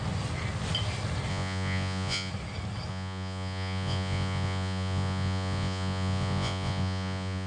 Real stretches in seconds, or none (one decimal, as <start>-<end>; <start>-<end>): 0.0-1.3; 2.3-2.9